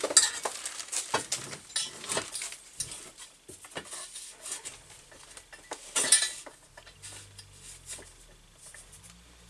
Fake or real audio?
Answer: real